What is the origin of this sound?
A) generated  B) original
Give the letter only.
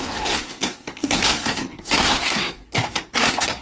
A